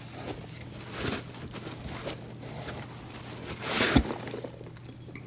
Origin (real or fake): real